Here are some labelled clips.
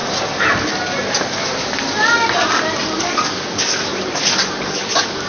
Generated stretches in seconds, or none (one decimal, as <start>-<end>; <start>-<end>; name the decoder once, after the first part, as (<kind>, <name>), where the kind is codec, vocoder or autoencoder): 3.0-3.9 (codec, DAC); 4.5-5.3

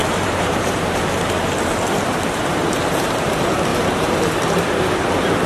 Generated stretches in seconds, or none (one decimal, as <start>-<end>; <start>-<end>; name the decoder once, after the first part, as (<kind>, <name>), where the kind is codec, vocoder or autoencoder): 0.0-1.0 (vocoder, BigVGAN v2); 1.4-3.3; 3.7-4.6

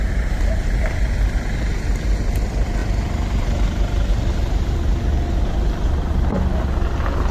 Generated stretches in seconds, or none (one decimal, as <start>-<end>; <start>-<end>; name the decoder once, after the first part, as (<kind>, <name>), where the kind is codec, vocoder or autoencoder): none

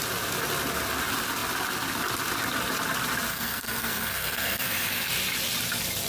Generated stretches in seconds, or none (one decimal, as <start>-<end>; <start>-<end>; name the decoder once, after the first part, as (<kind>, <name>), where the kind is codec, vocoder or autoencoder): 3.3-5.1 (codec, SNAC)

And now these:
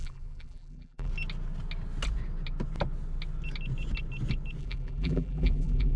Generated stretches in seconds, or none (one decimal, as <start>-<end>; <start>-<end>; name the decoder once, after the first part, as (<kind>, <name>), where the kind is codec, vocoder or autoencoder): 0.0-1.1 (vocoder, BigVGAN v2); 4.6-6.0